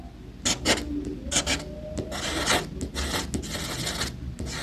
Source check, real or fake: real